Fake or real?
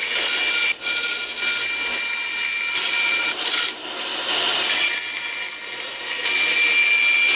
real